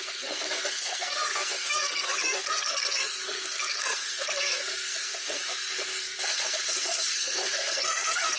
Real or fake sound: fake